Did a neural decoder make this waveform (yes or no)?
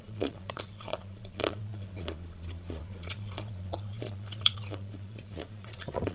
yes